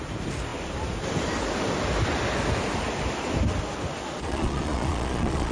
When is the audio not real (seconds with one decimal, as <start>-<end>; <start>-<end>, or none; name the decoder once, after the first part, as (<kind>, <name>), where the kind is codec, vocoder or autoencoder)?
4.3-5.5 (vocoder, Vocos)

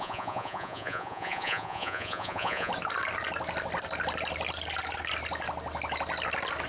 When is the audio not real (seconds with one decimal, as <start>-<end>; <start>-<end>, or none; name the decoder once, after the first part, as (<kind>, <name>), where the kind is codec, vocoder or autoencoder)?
0.0-2.7 (vocoder, Vocos)

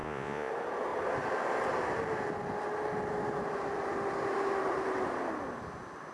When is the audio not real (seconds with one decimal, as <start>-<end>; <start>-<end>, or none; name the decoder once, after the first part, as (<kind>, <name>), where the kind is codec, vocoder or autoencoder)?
0.0-0.5 (vocoder, Vocos)

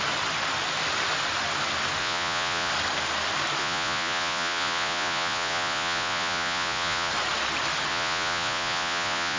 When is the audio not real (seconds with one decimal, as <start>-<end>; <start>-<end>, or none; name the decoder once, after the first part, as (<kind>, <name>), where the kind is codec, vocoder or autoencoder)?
2.0-2.7 (vocoder, Vocos); 3.6-7.1; 7.9-9.4